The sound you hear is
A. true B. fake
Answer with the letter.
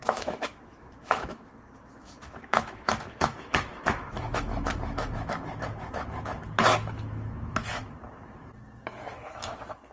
B